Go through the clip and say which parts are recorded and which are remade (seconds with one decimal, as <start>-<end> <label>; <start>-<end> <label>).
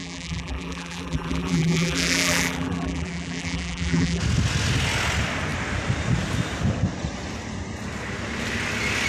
0.0-4.2 remade; 4.2-9.1 recorded